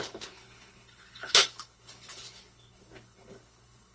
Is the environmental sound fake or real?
fake